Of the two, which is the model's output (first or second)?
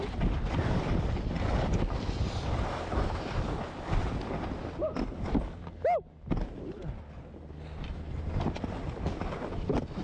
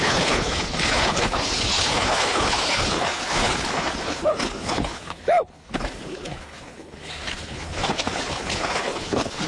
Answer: second